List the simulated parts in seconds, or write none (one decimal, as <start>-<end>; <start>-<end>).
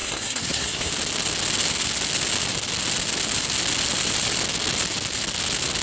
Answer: 0.0-0.9